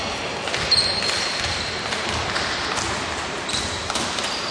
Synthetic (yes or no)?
no